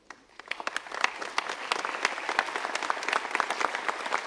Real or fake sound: real